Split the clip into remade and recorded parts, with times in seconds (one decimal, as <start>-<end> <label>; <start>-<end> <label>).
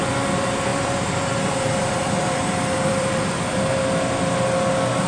0.0-0.7 recorded; 0.7-3.8 remade; 3.8-5.1 recorded